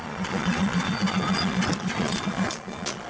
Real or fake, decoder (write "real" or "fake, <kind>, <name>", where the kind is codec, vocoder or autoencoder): fake, vocoder, Vocos